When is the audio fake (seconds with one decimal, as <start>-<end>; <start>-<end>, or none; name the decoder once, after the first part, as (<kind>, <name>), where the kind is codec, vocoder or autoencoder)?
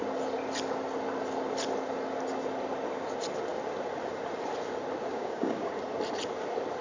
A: 5.1-5.7 (codec, DAC)